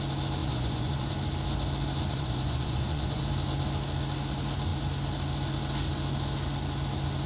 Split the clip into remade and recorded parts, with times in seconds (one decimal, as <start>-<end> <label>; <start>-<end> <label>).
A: 0.0-0.4 recorded; 0.4-1.1 remade; 1.1-2.1 recorded; 2.1-3.2 remade; 3.2-7.3 recorded